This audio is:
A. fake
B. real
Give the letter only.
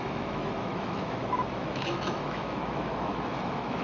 A